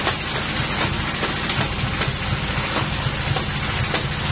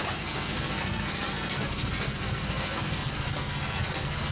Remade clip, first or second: second